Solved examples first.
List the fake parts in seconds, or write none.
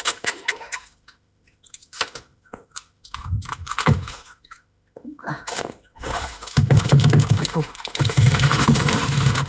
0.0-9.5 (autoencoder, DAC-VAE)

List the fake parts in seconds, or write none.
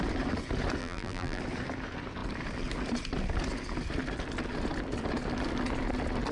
0.8-1.4 (vocoder, BigVGAN v2)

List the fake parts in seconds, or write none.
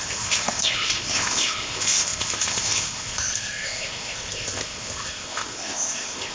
0.0-6.3 (codec, ZipCodec)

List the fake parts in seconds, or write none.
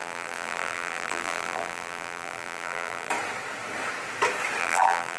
0.0-3.1 (vocoder, BigVGAN v2); 4.6-5.2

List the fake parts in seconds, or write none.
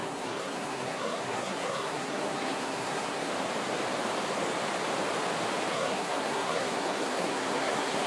0.0-3.3 (codec, SNAC); 5.7-8.1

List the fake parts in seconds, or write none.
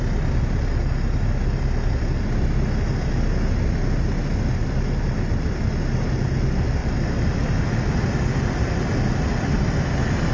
6.8-8.1 (vocoder, BigVGAN v2)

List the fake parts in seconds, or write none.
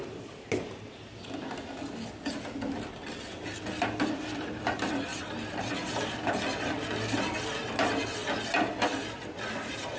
5.1-5.7 (vocoder, BigVGAN v2)